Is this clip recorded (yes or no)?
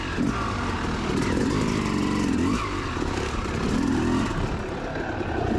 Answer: yes